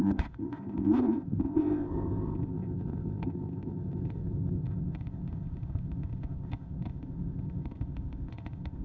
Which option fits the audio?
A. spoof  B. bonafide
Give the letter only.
A